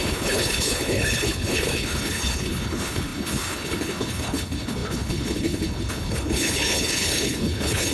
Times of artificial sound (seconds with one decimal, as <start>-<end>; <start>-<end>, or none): 0.0-7.9

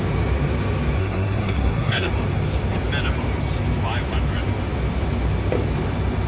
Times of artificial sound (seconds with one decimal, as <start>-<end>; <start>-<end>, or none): 1.0-2.1

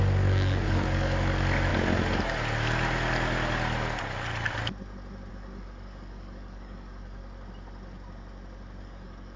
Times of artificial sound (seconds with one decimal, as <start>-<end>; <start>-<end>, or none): 0.0-1.7; 5.3-7.2; 8.8-9.4

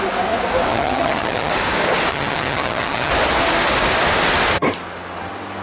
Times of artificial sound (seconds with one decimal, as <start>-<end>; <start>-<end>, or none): 0.7-1.5; 2.1-3.1

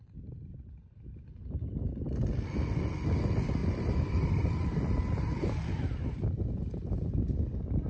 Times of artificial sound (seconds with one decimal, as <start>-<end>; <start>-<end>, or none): 3.6-5.2